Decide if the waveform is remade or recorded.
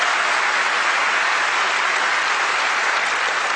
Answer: recorded